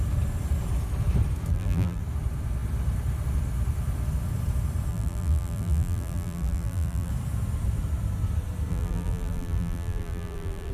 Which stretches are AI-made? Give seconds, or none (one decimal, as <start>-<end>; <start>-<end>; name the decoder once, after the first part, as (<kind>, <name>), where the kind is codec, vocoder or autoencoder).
1.5-2.0 (vocoder, BigVGAN v2); 4.9-7.1; 8.7-10.7